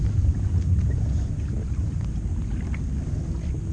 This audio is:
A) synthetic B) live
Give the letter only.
B